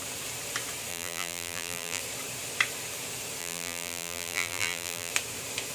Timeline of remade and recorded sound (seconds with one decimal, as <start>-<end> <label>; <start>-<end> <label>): 0.0-0.9 recorded; 0.9-2.0 remade; 2.0-3.4 recorded; 3.4-5.1 remade; 5.1-5.7 recorded